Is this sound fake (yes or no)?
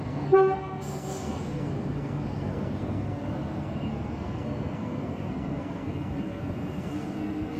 yes